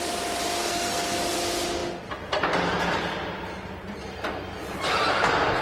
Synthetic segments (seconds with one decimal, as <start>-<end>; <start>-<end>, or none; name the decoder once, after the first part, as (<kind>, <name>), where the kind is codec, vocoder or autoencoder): 0.6-1.2 (codec, SNAC)